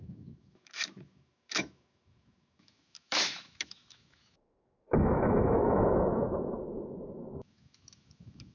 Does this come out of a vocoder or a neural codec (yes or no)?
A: yes